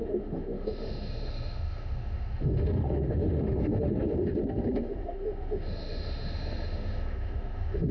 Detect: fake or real fake